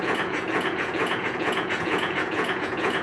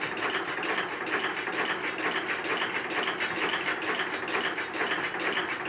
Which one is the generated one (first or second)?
first